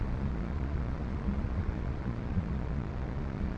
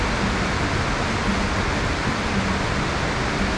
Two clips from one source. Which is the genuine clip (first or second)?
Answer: second